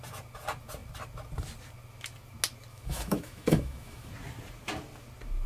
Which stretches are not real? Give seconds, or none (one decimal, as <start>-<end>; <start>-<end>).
2.7-4.1